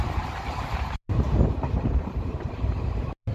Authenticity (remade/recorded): remade